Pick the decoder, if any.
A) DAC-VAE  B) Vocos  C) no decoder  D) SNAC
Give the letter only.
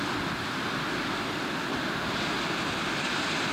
C